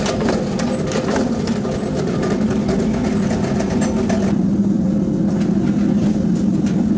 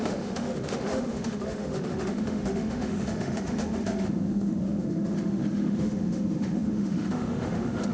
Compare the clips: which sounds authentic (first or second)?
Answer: first